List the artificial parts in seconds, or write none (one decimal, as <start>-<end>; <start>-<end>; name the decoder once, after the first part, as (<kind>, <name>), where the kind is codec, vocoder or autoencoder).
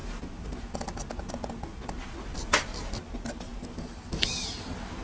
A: none